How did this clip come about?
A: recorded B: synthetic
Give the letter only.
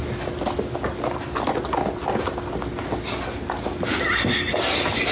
A